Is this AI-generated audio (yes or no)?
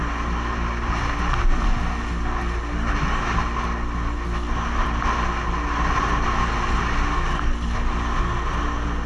no